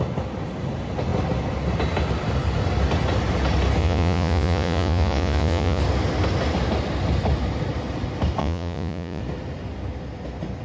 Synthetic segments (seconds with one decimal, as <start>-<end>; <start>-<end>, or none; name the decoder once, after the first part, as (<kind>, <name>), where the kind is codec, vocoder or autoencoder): 3.8-5.8 (vocoder, Vocos); 8.4-9.2